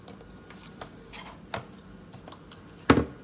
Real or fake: real